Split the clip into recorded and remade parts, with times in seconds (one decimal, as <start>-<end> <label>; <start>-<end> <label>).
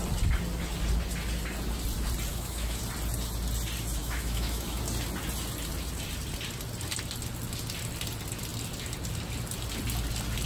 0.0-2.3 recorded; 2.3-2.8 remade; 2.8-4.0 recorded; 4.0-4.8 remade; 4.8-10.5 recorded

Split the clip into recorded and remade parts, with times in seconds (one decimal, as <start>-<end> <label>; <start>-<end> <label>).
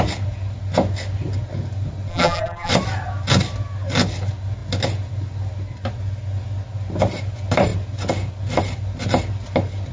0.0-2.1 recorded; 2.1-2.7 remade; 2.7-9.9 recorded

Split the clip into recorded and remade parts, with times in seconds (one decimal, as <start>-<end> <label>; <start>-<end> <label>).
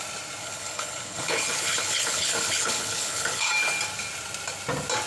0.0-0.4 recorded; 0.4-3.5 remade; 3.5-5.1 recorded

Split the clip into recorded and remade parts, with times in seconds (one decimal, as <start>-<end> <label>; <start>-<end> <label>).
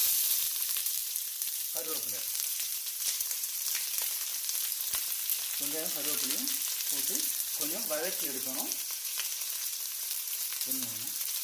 0.0-0.6 recorded; 0.6-4.3 remade; 4.3-7.0 recorded; 7.0-11.4 remade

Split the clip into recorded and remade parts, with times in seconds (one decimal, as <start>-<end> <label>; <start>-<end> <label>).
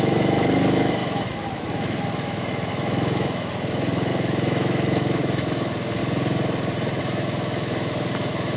0.0-6.0 remade; 6.0-7.0 recorded; 7.0-8.6 remade